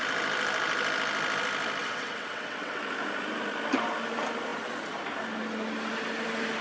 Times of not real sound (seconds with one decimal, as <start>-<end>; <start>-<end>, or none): 1.8-2.8